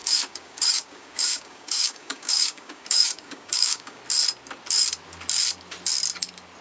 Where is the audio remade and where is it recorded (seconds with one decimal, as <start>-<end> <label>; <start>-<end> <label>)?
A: 0.0-4.0 remade; 4.0-6.6 recorded